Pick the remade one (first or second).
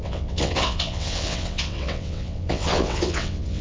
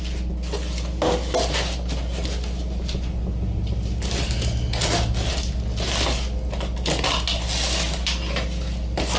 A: first